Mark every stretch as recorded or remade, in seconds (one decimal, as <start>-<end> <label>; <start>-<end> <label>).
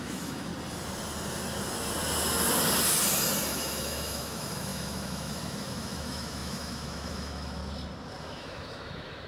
0.0-0.5 remade; 0.5-3.5 recorded; 3.5-7.6 remade; 7.6-8.2 recorded; 8.2-9.3 remade